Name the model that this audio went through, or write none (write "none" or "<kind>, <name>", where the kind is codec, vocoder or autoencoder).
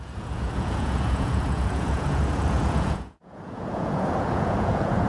vocoder, Vocos